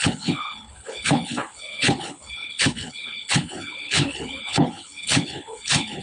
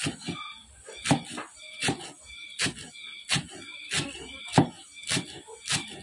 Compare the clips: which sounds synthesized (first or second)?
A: first